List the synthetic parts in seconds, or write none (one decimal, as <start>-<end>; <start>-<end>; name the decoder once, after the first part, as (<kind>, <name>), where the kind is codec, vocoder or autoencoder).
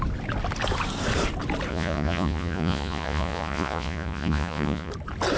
1.7-4.9 (vocoder, Vocos)